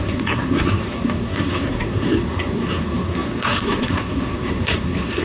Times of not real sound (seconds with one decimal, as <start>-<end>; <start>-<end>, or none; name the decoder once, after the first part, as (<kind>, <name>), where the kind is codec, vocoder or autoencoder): 0.0-5.2 (codec, SNAC)